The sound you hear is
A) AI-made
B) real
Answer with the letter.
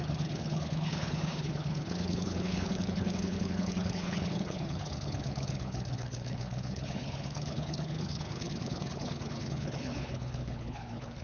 A